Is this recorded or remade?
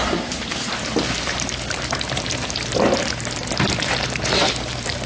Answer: remade